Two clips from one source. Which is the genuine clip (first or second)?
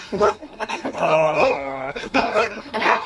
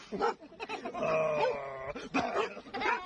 second